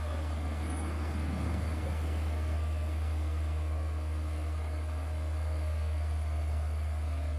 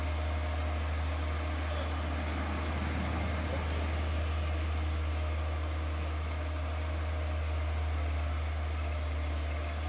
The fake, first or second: first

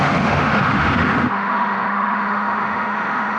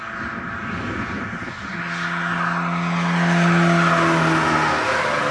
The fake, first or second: first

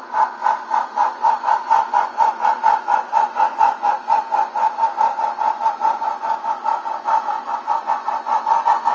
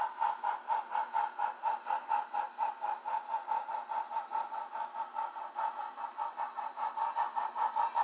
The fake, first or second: first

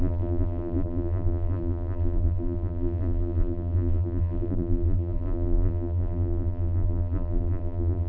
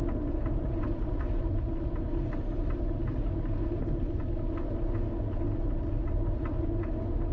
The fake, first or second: first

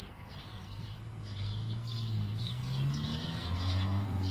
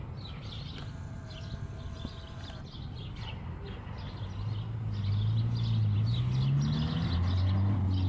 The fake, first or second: first